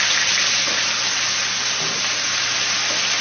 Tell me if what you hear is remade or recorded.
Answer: recorded